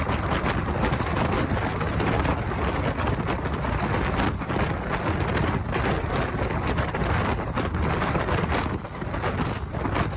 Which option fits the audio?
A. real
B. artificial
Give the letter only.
A